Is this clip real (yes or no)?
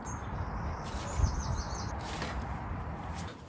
yes